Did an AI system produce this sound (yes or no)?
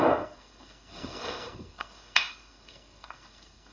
yes